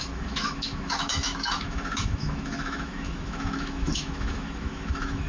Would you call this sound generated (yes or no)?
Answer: yes